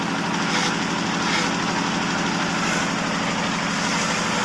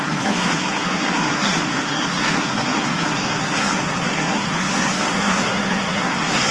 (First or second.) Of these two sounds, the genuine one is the first